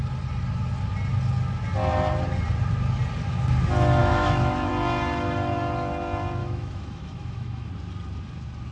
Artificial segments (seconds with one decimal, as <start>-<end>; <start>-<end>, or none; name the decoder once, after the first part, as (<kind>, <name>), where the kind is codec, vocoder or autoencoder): 4.0-4.7 (autoencoder, DAC-VAE); 6.4-7.7